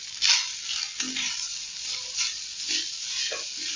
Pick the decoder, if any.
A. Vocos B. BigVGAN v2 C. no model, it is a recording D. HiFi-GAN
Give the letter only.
C